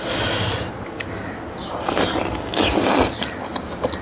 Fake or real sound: real